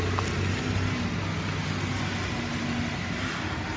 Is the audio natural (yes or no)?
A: yes